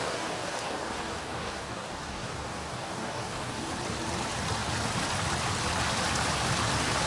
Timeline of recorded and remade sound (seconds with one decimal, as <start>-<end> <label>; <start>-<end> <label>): 0.0-3.7 remade; 3.7-7.1 recorded